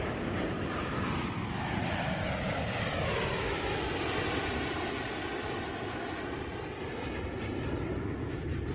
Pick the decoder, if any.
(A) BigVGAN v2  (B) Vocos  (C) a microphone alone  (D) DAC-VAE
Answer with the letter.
C